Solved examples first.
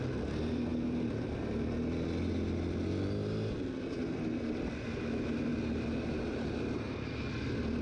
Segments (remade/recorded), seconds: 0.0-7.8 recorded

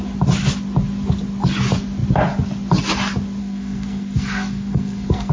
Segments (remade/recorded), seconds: 0.0-3.4 recorded; 3.4-5.3 remade

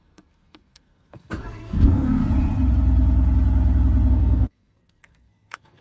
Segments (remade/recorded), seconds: 0.0-2.2 remade; 2.2-4.1 recorded; 4.1-5.8 remade

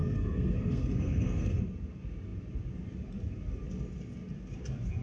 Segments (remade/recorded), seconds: 0.0-1.6 remade; 1.6-5.0 recorded

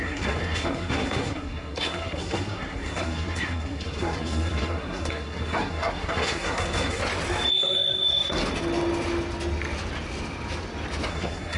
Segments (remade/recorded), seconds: 0.0-7.0 remade; 7.0-7.5 recorded; 7.5-8.4 remade; 8.4-11.1 recorded; 11.1-11.6 remade